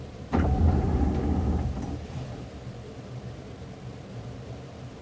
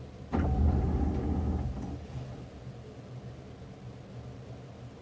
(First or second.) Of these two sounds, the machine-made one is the first